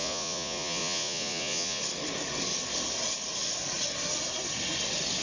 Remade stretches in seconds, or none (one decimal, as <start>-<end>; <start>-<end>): 0.0-1.8